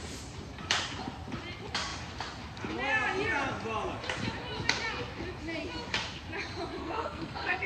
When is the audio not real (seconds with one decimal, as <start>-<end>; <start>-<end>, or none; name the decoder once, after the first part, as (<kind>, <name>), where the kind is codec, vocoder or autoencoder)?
6.8-7.7 (codec, SNAC)